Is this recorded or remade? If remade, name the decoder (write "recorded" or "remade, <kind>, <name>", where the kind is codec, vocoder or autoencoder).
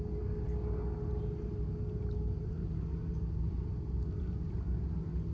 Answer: recorded